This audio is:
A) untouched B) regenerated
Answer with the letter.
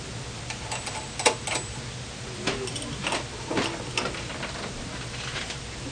A